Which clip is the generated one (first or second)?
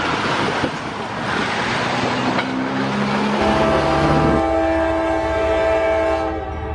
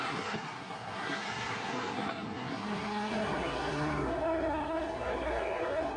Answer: second